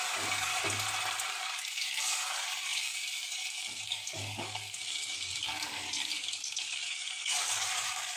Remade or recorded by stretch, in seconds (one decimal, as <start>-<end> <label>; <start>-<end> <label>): 0.0-0.5 remade; 0.5-1.3 recorded; 1.3-8.2 remade